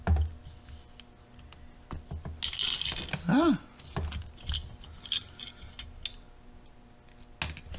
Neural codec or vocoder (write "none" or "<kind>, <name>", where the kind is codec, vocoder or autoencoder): none